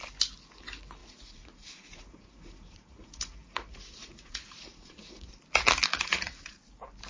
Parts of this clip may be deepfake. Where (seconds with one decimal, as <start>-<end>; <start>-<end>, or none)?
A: 1.0-5.3; 5.9-6.5